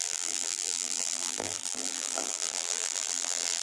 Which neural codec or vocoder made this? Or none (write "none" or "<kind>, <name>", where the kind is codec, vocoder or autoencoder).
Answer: vocoder, BigVGAN v2